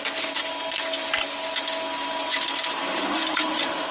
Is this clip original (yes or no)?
yes